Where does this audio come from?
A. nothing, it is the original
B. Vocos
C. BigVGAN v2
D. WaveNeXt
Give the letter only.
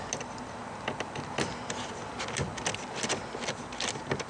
A